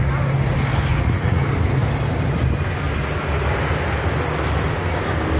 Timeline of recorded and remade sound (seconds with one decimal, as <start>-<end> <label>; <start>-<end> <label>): 0.0-0.9 recorded; 0.9-1.4 remade; 1.4-5.4 recorded